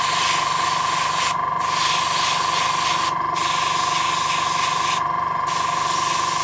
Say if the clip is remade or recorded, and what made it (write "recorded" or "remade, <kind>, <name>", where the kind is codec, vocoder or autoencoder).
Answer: recorded